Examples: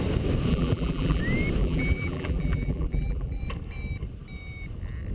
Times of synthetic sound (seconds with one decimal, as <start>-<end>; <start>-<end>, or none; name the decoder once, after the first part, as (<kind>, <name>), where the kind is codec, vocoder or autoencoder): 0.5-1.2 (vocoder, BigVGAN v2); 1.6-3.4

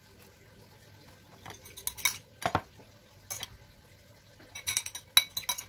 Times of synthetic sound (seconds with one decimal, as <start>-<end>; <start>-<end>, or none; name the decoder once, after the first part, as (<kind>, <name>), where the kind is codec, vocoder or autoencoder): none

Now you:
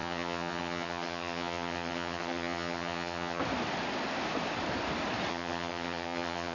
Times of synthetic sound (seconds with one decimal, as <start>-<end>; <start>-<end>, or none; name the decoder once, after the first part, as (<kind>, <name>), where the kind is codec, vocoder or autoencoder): 0.0-3.4 (vocoder, HiFi-GAN); 5.3-6.5

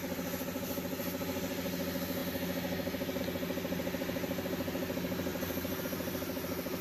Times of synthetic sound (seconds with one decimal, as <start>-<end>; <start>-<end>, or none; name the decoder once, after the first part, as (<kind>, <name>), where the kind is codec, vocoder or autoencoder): none